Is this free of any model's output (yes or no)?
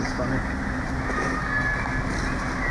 yes